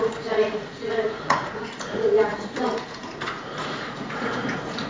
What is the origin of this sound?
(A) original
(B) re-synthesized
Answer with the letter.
B